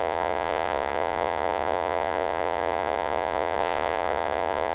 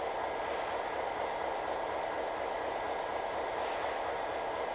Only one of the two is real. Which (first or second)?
second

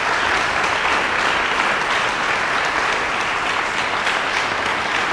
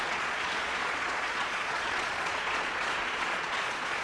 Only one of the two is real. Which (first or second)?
first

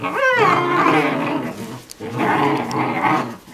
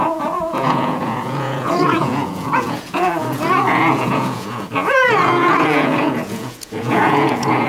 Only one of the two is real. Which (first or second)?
first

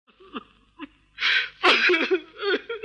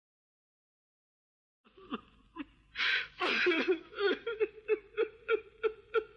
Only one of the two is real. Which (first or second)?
first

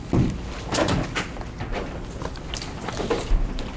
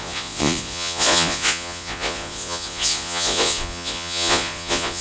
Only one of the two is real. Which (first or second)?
first